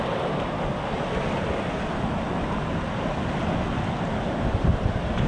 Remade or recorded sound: recorded